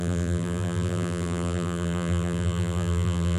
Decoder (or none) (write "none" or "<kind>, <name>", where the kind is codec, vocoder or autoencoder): vocoder, BigVGAN v2